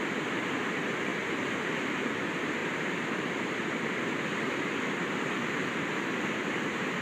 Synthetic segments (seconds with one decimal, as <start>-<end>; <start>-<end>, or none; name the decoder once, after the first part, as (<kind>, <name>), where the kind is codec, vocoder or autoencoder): 1.1-2.1 (vocoder, BigVGAN v2)